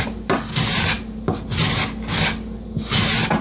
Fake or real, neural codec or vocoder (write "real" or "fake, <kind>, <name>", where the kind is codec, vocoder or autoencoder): real